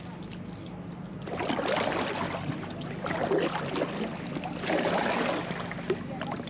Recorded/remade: recorded